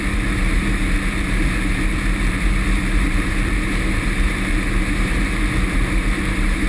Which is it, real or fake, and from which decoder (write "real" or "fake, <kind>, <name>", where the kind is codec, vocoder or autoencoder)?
fake, vocoder, BigVGAN v2